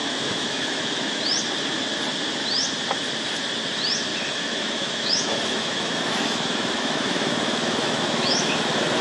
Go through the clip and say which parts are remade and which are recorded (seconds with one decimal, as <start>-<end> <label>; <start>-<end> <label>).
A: 0.0-1.2 remade; 1.2-4.1 recorded; 4.1-9.0 remade